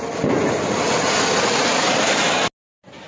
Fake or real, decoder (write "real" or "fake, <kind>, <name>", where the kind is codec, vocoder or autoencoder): real